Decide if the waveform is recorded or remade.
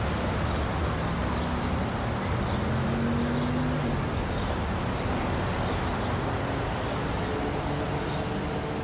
recorded